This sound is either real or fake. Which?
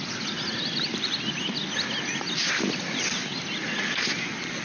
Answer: real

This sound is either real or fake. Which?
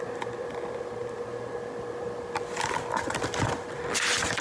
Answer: real